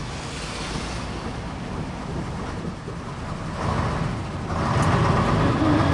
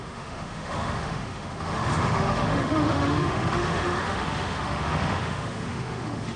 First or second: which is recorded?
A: first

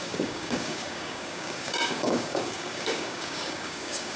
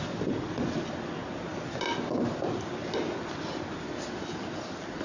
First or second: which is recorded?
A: second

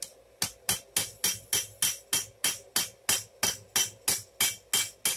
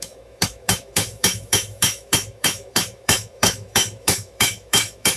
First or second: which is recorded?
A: first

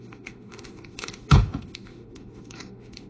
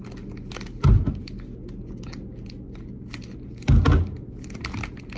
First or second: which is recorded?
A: second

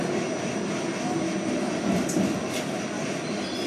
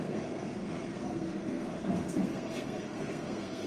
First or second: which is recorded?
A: first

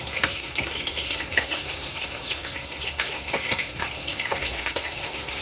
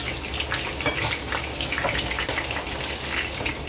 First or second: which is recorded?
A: second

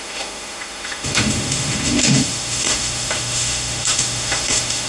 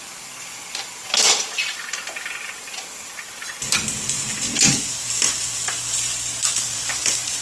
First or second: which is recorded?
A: second